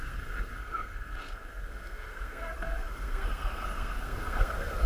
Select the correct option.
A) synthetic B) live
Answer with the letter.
A